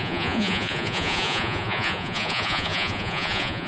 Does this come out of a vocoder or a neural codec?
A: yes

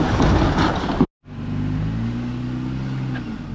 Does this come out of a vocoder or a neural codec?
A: no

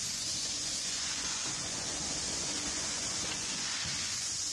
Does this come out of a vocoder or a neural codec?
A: yes